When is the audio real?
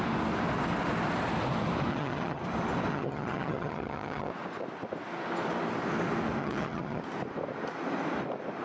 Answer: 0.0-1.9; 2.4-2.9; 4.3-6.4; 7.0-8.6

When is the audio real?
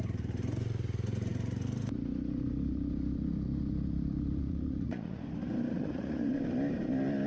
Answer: 0.0-4.4; 5.2-5.7; 6.3-7.3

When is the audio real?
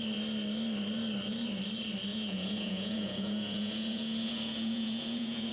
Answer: 0.0-2.1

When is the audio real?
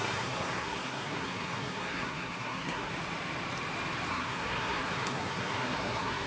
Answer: 2.9-4.1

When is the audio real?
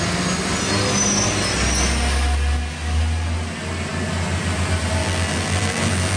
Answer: 0.0-5.0